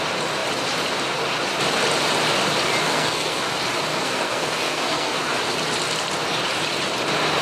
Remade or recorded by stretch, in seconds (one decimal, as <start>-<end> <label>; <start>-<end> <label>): 0.0-2.8 recorded; 2.8-3.4 remade; 3.4-3.9 recorded; 3.9-5.2 remade; 5.2-7.4 recorded